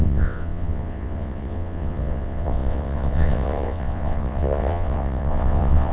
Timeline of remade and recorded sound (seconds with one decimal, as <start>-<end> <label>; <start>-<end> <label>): 0.0-5.9 remade